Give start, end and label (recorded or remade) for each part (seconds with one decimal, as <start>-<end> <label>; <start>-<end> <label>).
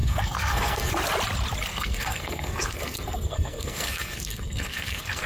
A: 0.0-0.9 remade; 0.9-1.7 recorded; 1.7-5.3 remade